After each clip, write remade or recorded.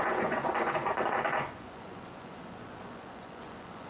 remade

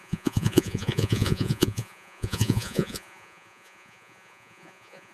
remade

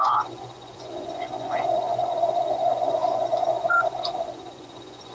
remade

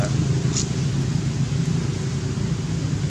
recorded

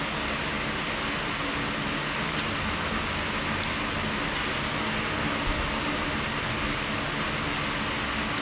recorded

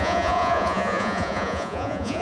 remade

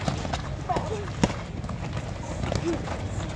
recorded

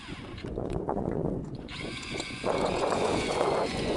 remade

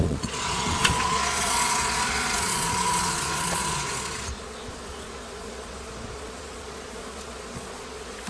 remade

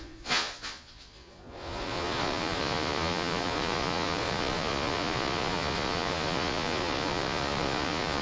remade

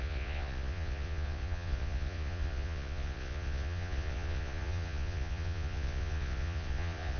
remade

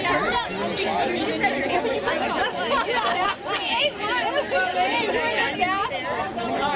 recorded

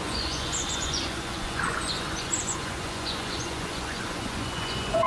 remade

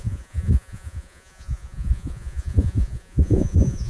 remade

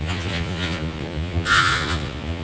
remade